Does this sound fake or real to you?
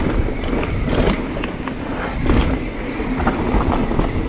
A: real